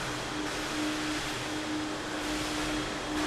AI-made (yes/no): no